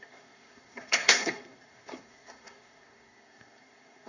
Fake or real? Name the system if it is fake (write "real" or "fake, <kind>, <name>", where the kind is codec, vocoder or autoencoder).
fake, codec, SNAC